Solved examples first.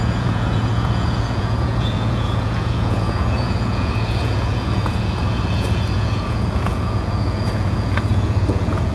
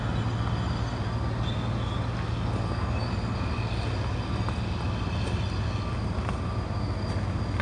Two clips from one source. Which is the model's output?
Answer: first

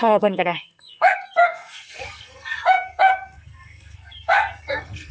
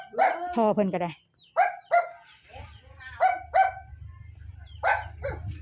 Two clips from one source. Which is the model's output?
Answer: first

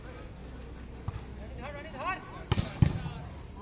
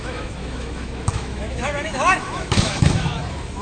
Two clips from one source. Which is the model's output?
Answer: second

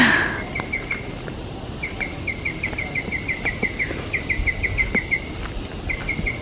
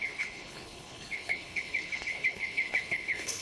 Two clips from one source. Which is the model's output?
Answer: second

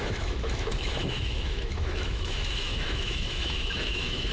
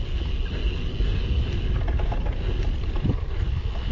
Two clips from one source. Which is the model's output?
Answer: first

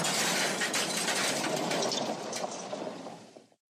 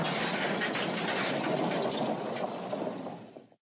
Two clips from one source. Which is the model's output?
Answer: first